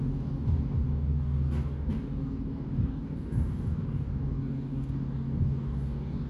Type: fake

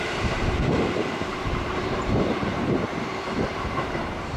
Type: fake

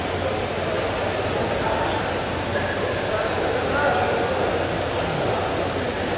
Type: real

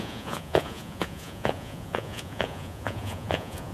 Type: fake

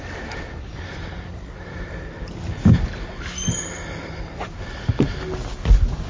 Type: real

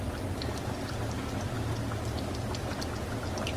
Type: real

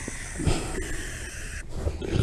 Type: real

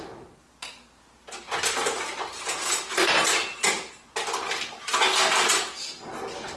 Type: real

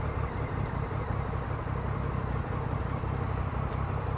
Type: real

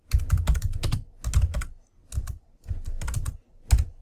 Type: real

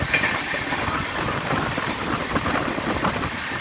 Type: fake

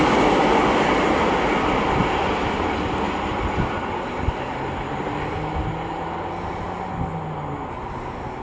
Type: real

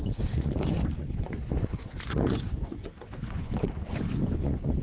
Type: fake